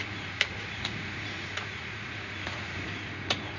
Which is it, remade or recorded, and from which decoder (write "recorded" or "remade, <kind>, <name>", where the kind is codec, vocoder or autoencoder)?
remade, vocoder, Vocos